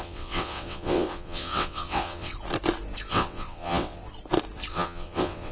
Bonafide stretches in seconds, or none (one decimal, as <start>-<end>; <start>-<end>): 2.3-3.1; 4.0-4.7